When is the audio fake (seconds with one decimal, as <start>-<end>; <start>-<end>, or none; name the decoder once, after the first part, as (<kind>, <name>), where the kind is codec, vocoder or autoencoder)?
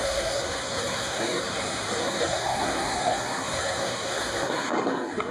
0.0-5.3 (codec, SNAC)